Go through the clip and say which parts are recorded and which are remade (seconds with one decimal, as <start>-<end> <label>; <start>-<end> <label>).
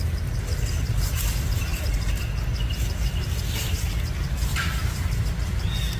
0.0-4.5 recorded; 4.5-5.2 remade; 5.2-6.0 recorded